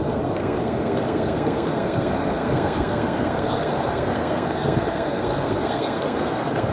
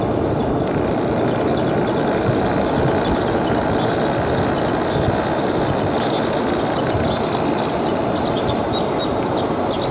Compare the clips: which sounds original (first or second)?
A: second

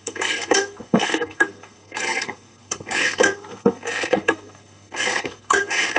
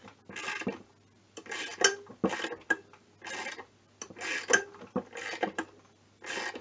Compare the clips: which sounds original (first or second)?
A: second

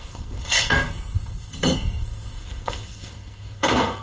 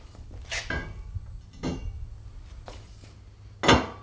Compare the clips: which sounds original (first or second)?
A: second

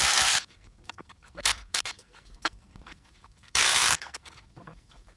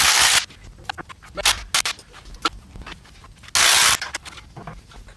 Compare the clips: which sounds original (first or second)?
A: second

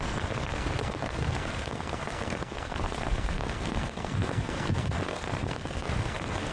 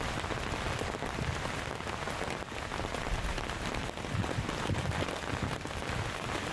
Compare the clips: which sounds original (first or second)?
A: second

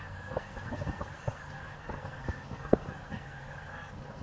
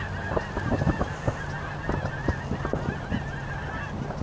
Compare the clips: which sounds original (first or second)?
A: second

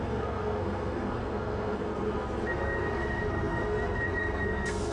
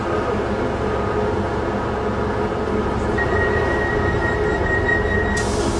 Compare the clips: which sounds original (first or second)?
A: second